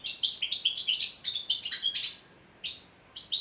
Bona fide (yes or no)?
yes